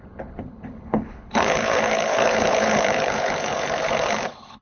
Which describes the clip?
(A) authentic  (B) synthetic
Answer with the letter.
B